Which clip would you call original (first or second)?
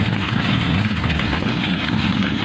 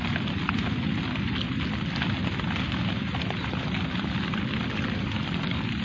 second